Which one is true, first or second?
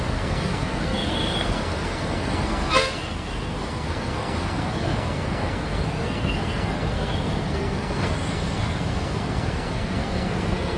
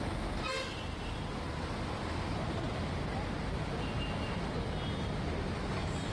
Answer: second